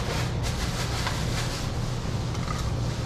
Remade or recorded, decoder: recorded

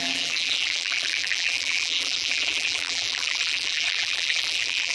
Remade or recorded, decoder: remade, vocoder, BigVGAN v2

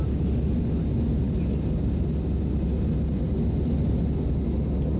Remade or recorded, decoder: recorded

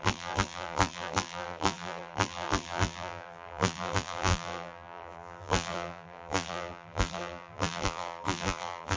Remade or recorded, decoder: remade, vocoder, BigVGAN v2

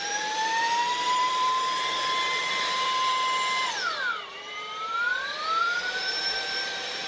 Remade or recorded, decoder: remade, vocoder, BigVGAN v2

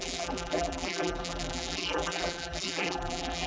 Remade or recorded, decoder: remade, vocoder, BigVGAN v2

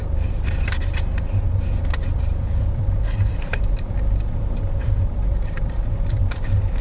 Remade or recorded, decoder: remade, vocoder, BigVGAN v2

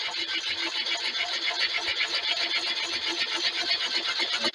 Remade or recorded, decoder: recorded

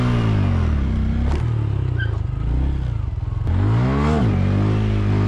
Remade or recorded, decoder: recorded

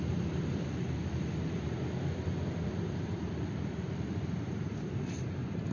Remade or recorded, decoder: remade, vocoder, BigVGAN v2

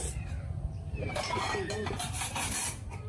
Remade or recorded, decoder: remade, vocoder, BigVGAN v2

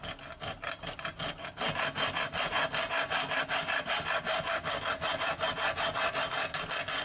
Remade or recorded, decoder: recorded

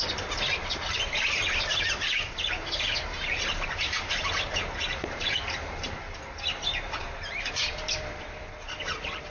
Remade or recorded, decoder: remade, vocoder, BigVGAN v2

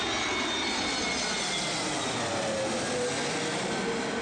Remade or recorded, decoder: recorded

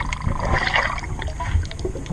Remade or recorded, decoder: recorded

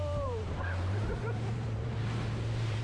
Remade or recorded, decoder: remade, vocoder, BigVGAN v2